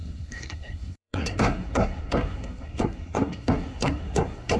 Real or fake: fake